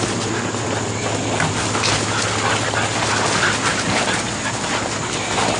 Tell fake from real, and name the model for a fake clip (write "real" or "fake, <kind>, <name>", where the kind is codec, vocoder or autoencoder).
real